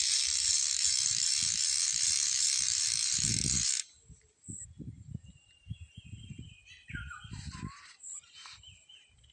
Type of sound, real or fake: fake